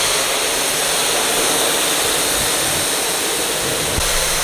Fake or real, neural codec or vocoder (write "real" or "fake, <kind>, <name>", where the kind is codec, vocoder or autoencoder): real